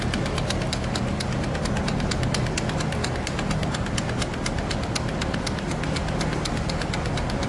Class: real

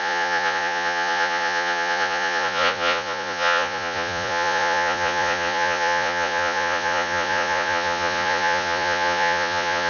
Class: fake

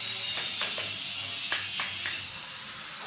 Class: real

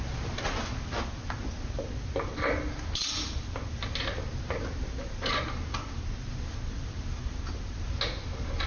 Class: real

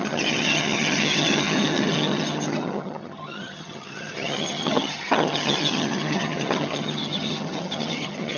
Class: fake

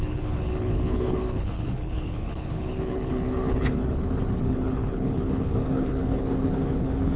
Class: fake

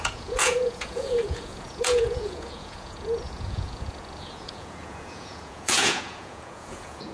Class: fake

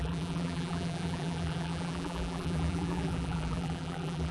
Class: fake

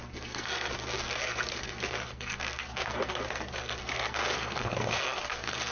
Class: fake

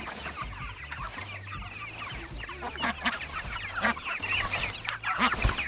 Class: real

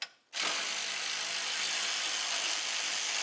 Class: real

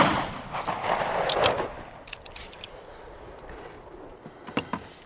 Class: real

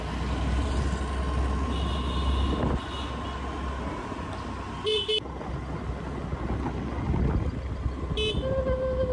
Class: real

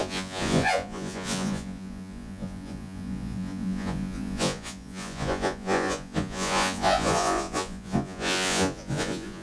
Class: fake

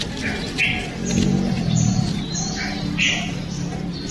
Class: real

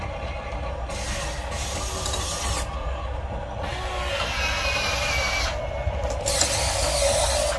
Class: real